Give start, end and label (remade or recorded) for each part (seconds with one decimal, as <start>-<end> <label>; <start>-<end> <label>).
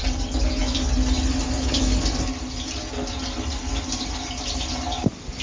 0.0-5.4 recorded